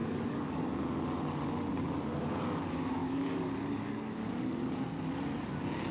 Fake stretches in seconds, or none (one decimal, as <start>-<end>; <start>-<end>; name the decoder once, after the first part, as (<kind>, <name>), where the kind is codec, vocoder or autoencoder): 0.0-0.6 (codec, DAC); 3.0-4.8